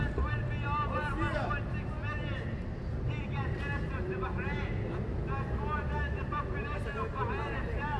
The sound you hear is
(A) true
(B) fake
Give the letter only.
A